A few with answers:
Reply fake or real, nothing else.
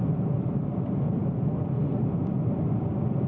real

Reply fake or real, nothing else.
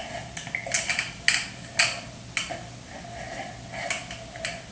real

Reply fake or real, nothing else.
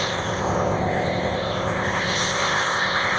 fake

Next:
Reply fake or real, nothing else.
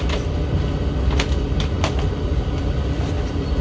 real